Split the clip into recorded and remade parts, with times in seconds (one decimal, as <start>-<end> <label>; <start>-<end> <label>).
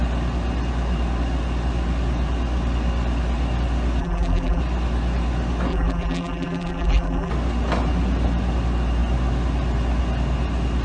0.0-4.0 recorded; 4.0-4.6 remade; 4.6-5.7 recorded; 5.7-7.3 remade; 7.3-10.8 recorded